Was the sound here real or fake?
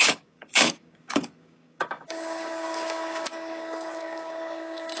fake